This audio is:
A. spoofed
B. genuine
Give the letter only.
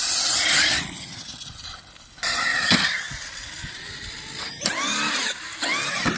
B